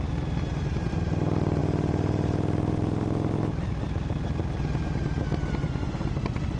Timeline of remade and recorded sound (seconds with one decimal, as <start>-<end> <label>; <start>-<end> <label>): 0.0-6.6 recorded